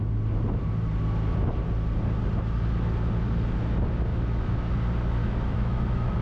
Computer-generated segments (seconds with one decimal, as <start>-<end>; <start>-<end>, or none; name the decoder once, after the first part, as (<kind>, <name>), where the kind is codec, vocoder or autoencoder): 4.1-4.7 (autoencoder, DAC-VAE); 5.2-6.2